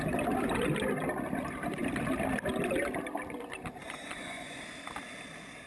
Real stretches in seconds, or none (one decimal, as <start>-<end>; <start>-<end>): 0.0-3.8; 4.6-5.7